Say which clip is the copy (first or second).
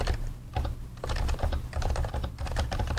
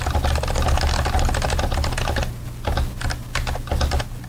first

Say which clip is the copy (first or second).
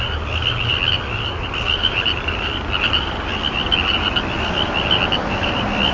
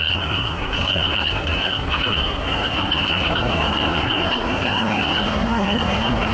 second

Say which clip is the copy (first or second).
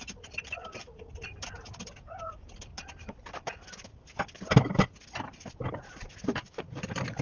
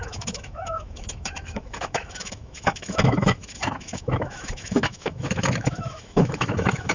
second